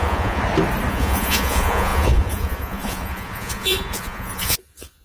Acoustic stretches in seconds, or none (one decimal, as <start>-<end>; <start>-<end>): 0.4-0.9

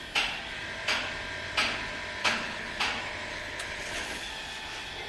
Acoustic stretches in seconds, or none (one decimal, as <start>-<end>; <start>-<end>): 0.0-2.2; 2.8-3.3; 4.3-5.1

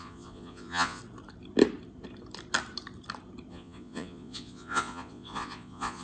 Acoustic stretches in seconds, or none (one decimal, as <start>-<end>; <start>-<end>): 1.0-3.5